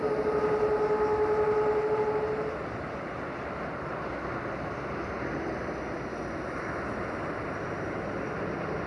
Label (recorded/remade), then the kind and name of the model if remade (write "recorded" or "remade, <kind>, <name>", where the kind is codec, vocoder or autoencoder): recorded